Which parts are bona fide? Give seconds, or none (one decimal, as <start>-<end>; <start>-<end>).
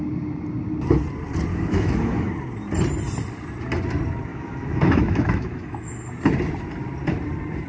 0.0-1.5; 2.3-4.3; 6.1-7.7